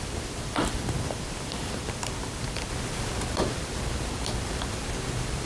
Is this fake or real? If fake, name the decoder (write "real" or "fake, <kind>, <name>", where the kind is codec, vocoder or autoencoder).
fake, vocoder, BigVGAN v2